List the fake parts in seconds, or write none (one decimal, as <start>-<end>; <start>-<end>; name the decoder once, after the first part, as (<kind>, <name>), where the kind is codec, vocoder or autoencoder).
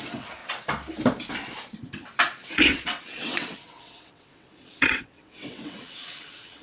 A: 0.0-0.4 (vocoder, WaveNeXt); 2.5-6.6